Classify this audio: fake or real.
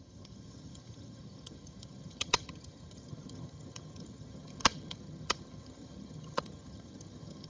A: fake